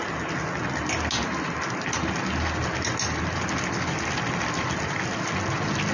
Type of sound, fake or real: real